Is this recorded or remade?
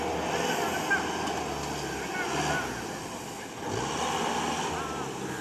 recorded